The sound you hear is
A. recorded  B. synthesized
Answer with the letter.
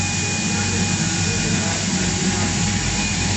A